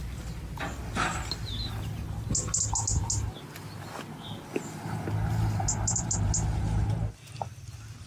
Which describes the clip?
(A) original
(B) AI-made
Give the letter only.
A